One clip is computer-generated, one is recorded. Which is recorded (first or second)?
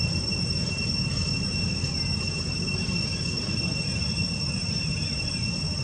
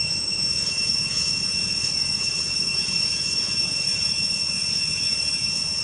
first